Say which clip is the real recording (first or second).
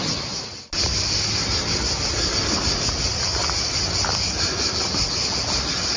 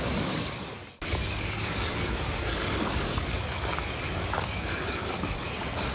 first